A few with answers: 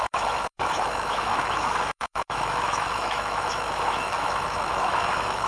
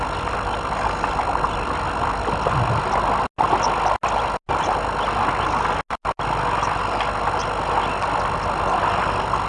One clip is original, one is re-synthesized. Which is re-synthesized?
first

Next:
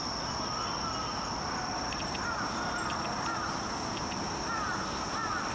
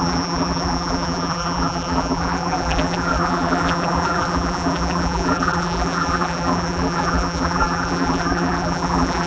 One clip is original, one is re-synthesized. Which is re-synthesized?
second